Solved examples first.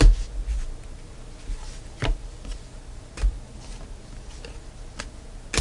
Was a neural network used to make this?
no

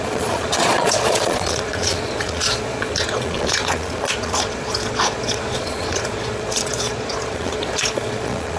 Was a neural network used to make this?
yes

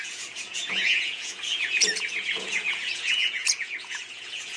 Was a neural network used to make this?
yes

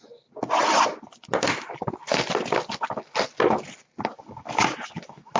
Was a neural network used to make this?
no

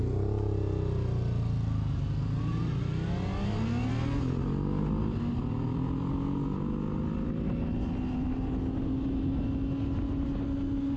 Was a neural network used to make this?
no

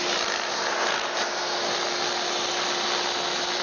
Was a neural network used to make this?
no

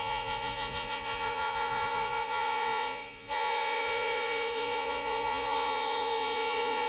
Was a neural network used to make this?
yes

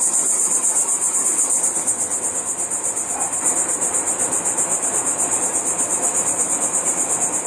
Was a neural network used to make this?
no